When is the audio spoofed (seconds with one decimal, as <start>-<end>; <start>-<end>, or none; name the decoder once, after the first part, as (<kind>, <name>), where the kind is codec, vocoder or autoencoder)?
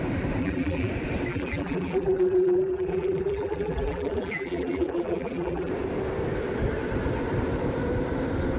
0.4-0.9 (vocoder, BigVGAN v2); 1.3-5.7